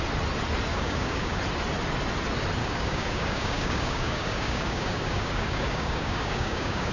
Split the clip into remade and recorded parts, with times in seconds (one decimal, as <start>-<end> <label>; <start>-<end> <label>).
0.0-0.7 recorded; 0.7-1.4 remade; 1.4-2.6 recorded; 2.6-6.9 remade